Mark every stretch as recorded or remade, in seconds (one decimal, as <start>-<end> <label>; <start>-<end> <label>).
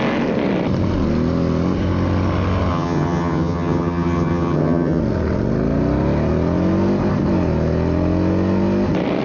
0.0-2.7 recorded; 2.7-5.0 remade; 5.0-9.2 recorded